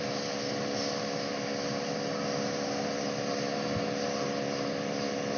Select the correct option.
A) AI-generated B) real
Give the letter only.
B